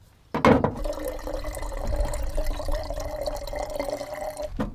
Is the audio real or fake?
real